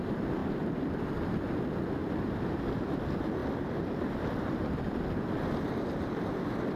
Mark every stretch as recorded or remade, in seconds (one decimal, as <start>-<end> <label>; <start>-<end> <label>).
0.0-2.0 recorded; 2.0-2.6 remade; 2.6-6.8 recorded

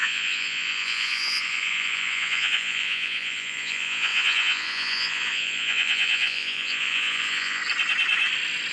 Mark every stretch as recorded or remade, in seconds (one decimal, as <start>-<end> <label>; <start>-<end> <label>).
0.0-7.6 remade; 7.6-8.7 recorded

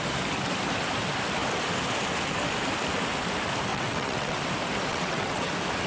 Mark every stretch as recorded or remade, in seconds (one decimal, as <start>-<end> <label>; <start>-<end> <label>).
0.0-3.7 recorded; 3.7-4.4 remade; 4.4-4.9 recorded; 4.9-5.5 remade; 5.5-5.9 recorded

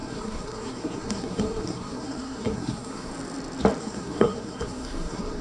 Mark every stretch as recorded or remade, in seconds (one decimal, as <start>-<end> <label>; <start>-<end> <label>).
0.0-3.1 remade; 3.1-3.8 recorded; 3.8-5.4 remade